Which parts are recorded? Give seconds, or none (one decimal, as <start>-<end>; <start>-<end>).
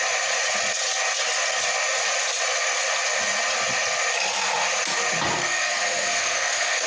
0.0-5.4